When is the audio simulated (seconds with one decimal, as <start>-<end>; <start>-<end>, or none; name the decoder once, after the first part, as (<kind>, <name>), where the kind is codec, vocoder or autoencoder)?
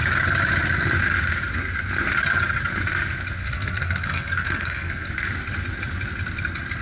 3.4-5.1 (codec, SNAC)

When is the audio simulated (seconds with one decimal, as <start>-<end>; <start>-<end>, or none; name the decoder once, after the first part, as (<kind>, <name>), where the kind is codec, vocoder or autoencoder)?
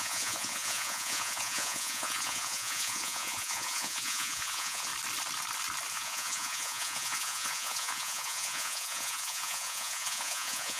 0.0-4.9 (vocoder, Vocos); 5.9-10.8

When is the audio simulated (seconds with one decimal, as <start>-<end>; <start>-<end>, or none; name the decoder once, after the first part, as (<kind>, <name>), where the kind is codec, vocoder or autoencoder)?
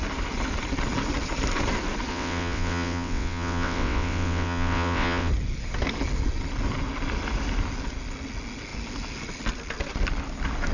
2.1-5.3 (vocoder, WaveNeXt)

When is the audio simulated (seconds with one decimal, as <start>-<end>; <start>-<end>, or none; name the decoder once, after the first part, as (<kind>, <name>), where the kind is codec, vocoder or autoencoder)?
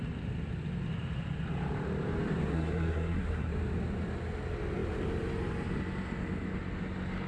2.5-3.5 (codec, SNAC)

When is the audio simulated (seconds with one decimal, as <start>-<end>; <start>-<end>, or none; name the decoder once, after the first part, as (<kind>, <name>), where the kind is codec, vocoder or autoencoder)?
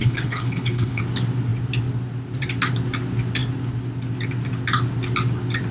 0.0-1.0 (codec, HILCodec)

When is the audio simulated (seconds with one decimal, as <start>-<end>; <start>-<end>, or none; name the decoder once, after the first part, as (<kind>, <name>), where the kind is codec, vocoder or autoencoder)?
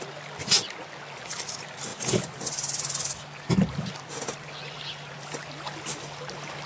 none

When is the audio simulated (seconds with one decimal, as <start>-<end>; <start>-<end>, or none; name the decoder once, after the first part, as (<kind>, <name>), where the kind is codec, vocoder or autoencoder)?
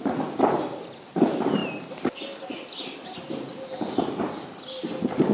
none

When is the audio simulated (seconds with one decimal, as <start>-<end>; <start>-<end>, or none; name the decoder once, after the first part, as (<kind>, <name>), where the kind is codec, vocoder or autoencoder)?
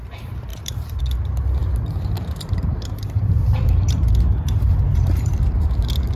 0.5-1.0 (vocoder, BigVGAN v2); 1.6-5.3